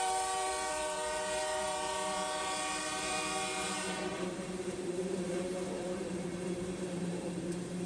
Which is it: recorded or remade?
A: remade